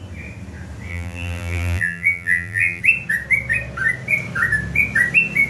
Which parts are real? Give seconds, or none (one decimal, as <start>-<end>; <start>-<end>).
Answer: 0.0-0.9; 2.8-5.5